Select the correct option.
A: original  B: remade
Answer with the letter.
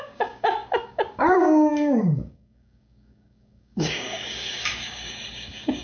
B